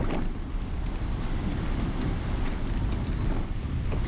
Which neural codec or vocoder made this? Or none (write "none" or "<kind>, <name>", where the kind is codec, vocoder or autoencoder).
vocoder, BigVGAN v2